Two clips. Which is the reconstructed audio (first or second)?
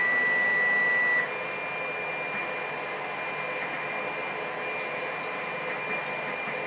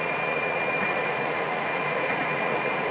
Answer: second